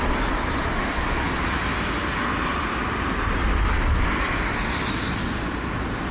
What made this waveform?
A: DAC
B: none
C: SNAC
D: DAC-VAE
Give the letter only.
B